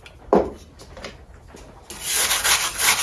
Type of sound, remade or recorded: recorded